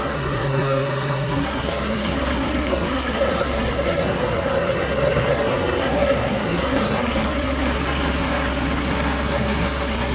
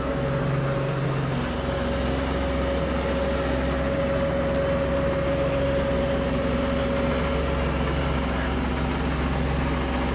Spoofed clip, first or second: first